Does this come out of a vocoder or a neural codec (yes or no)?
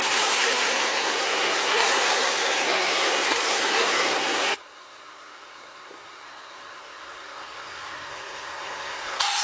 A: yes